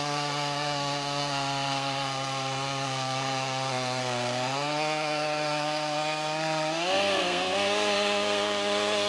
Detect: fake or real fake